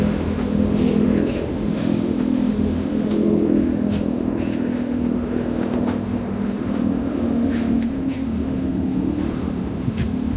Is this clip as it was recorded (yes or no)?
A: no